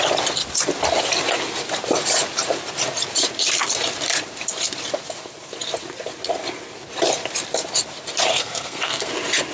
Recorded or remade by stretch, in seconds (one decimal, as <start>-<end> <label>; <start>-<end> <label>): 0.0-8.3 recorded; 8.3-9.1 remade; 9.1-9.5 recorded